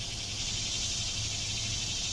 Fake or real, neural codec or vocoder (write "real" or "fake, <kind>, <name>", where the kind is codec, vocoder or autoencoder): real